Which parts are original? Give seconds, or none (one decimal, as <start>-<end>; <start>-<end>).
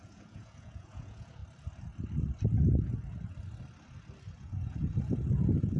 1.4-4.4